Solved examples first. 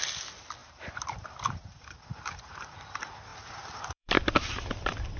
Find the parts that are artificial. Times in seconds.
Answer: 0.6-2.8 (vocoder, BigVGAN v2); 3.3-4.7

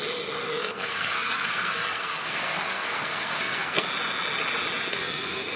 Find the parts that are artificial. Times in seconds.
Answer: 0.5-3.9 (codec, SNAC); 4.9-5.6

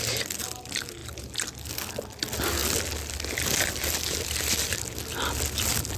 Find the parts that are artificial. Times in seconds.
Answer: none

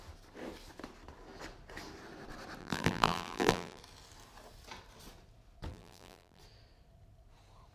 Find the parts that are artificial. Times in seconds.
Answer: 2.6-3.8 (vocoder, BigVGAN v2); 5.7-6.4

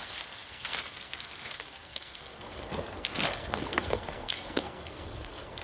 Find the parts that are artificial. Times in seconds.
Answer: 0.0-5.6 (codec, SNAC)